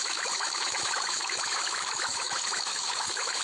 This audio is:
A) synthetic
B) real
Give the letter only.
A